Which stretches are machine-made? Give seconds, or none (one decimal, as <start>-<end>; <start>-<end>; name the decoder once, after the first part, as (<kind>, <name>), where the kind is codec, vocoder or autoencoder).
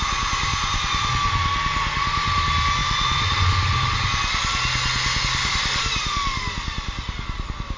none